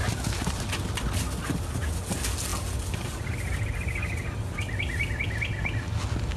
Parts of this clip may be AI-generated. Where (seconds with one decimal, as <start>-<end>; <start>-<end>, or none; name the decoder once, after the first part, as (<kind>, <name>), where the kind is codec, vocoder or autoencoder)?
none